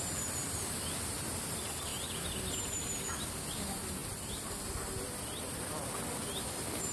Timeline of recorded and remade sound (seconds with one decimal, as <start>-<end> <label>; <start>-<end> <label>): 0.0-6.9 recorded

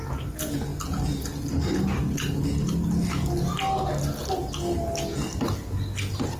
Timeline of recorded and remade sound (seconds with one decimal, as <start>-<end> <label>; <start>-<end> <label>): 0.0-6.4 recorded

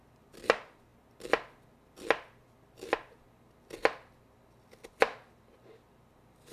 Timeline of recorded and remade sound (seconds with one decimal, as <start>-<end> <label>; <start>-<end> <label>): 0.0-6.5 recorded